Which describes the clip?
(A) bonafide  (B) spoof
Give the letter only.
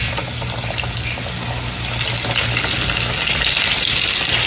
A